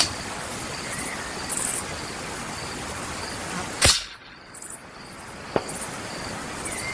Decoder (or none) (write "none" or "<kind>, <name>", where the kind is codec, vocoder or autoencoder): none